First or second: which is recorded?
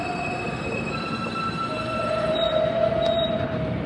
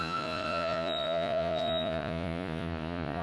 first